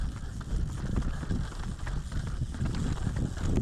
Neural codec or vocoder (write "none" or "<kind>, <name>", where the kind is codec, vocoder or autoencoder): none